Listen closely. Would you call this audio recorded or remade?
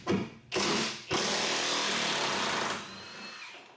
recorded